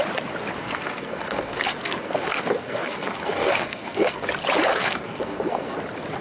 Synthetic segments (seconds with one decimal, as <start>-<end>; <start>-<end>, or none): 0.6-4.3; 4.7-5.8